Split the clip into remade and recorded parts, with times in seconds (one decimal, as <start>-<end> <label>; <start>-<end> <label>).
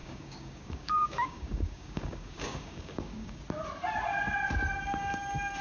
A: 0.0-3.4 remade; 3.4-5.6 recorded